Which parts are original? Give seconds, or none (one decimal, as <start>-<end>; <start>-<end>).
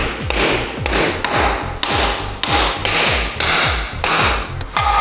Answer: 0.0-5.0